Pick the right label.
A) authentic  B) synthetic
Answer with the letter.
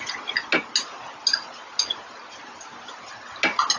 A